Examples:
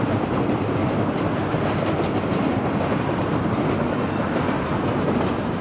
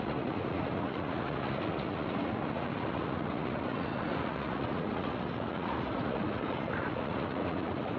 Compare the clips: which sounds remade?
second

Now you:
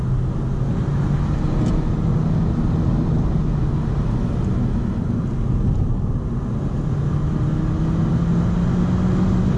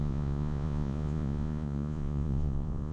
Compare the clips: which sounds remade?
second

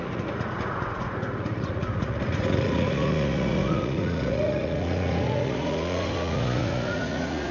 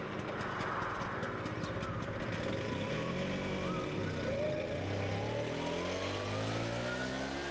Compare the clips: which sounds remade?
first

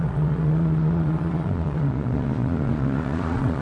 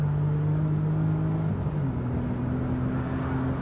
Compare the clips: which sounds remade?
first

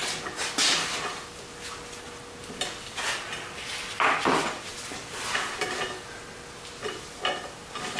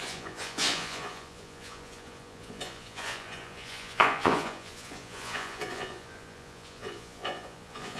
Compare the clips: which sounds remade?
second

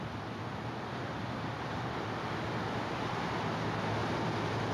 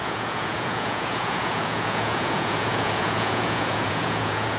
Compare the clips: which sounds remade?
second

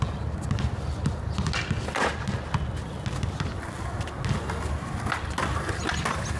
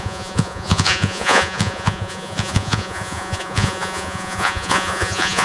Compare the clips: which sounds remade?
second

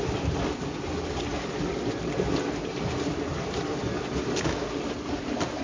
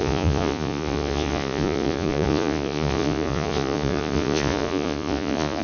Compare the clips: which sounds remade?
second